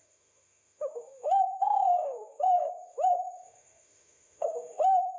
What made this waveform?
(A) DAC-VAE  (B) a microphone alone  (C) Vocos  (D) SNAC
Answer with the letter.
A